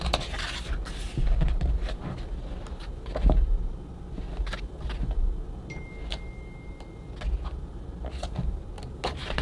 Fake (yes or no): no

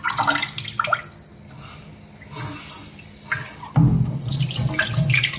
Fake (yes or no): no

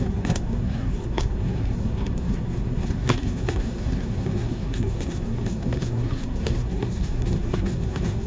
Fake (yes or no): yes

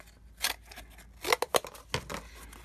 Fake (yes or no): no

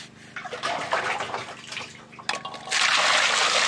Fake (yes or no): no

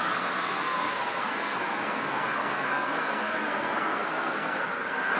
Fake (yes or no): yes